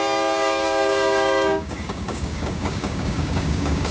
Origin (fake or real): fake